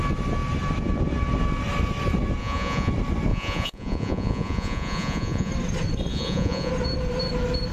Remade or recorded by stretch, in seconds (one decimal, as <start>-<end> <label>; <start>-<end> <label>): 0.0-2.4 recorded; 2.4-2.9 remade; 2.9-3.3 recorded; 3.3-5.5 remade; 5.5-6.1 recorded; 6.1-6.7 remade; 6.7-7.7 recorded